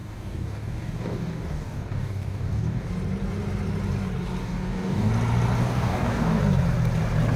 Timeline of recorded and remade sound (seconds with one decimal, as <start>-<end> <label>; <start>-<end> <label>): 0.0-2.9 remade; 2.9-4.4 recorded; 4.4-5.1 remade; 5.1-5.6 recorded; 5.6-6.4 remade; 6.4-7.4 recorded